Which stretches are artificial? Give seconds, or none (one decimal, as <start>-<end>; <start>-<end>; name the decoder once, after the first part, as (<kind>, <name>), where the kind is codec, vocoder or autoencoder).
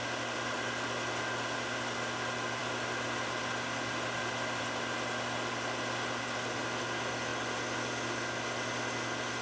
none